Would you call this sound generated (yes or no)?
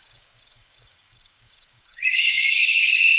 yes